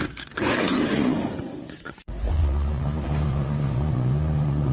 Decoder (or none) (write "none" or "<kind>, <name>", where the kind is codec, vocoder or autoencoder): vocoder, Vocos